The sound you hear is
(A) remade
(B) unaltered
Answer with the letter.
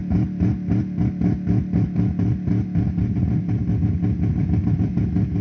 B